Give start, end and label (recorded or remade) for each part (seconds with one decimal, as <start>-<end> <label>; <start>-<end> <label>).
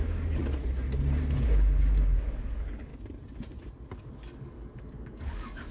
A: 0.0-0.4 remade; 0.4-2.2 recorded; 2.2-2.9 remade; 2.9-3.9 recorded; 3.9-5.7 remade